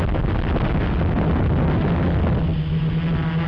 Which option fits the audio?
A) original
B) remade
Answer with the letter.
A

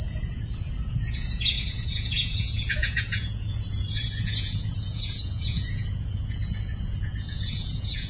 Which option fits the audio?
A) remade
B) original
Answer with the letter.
A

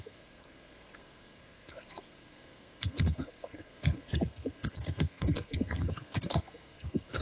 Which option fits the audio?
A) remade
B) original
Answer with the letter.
A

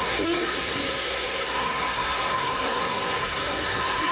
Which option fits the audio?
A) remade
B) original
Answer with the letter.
A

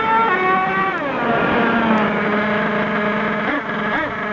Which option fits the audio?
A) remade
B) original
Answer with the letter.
B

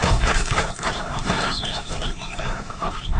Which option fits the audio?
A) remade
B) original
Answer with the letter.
A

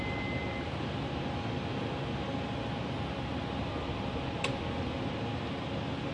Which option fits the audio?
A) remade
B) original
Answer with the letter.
B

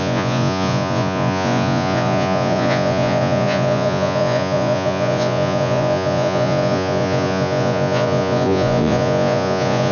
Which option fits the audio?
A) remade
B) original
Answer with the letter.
A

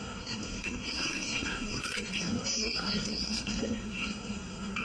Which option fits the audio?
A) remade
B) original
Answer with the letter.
A